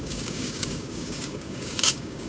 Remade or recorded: remade